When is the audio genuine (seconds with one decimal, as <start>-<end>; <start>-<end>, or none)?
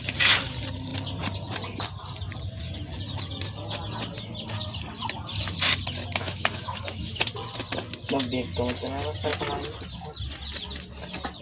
0.0-6.2; 7.2-11.4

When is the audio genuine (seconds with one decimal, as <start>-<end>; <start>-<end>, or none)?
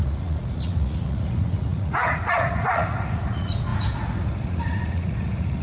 none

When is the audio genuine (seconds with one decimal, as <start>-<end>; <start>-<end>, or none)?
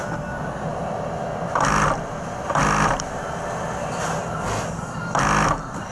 0.0-5.9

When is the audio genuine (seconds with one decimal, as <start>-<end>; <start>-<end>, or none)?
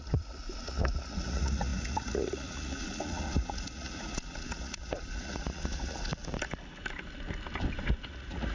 6.1-8.1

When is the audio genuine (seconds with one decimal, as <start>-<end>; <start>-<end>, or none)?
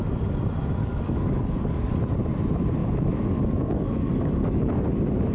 0.0-0.8; 2.0-2.8; 4.8-5.3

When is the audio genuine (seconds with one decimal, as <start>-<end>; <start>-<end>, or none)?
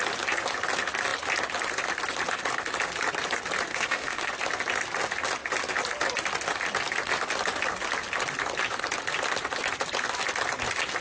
0.0-3.7; 4.3-11.0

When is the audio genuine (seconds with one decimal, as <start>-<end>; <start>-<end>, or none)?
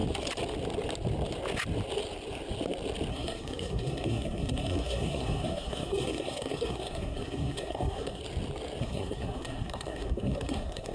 0.0-3.1; 8.2-8.8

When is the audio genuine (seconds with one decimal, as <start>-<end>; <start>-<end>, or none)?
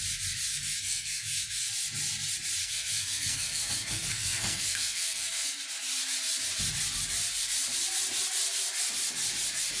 0.0-0.5; 1.7-2.6; 5.6-9.8